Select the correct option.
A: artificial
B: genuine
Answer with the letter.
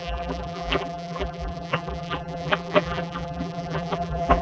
A